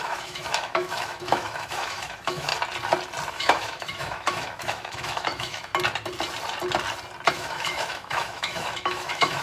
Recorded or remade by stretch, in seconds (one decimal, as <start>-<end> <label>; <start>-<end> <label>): 0.0-2.5 remade; 2.5-3.3 recorded; 3.3-5.7 remade; 5.7-7.3 recorded; 7.3-9.4 remade